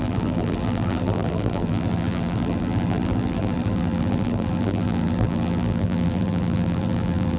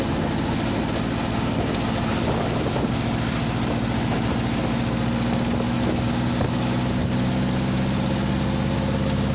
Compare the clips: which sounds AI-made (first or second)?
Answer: first